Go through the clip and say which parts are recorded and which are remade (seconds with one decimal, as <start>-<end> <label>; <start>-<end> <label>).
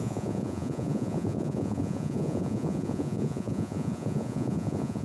0.0-5.0 remade